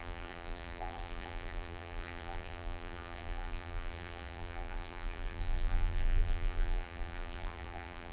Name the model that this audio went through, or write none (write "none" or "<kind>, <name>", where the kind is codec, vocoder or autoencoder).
vocoder, BigVGAN v2